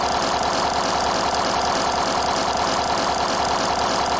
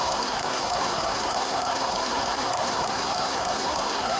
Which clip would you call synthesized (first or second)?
second